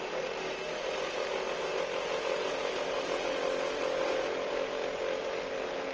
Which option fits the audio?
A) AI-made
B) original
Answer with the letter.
B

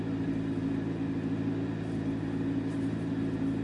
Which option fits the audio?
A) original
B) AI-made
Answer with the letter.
A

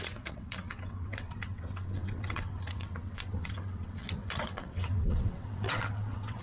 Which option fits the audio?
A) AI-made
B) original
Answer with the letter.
A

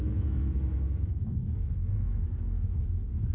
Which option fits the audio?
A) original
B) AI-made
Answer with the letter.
B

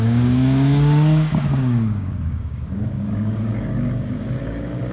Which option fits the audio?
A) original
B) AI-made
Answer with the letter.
B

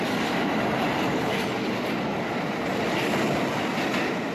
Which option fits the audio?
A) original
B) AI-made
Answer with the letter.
A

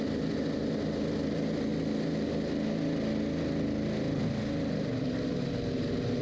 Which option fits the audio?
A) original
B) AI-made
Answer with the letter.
A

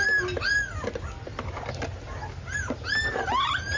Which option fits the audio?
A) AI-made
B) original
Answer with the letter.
B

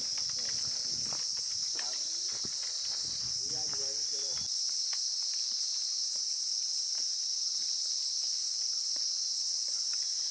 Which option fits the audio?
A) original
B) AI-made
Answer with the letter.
A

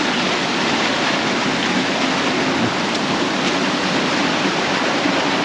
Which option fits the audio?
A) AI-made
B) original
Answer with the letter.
B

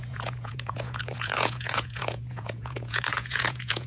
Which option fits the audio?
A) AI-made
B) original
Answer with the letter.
A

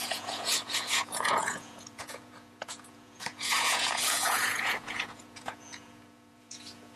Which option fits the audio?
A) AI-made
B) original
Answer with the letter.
A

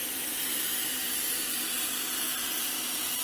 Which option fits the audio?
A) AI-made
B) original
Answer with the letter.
A